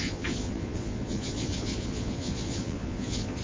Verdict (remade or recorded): remade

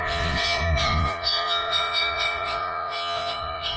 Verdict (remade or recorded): remade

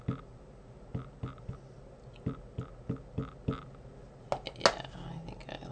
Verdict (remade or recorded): recorded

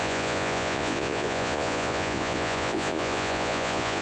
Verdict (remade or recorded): remade